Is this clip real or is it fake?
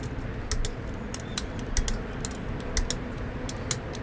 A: real